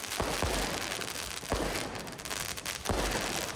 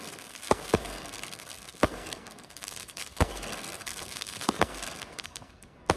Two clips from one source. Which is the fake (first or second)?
second